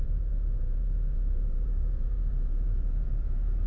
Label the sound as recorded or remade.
remade